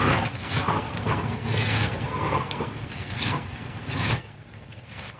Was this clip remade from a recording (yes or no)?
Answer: yes